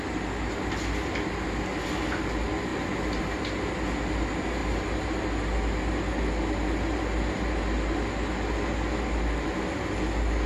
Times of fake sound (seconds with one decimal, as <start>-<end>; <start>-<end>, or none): none